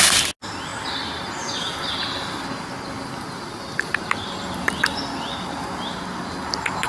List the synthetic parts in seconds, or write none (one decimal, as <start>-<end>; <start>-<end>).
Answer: none